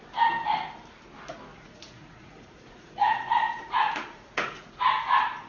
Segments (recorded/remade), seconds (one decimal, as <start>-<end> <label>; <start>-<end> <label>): 0.0-1.5 recorded; 1.5-4.8 remade; 4.8-5.5 recorded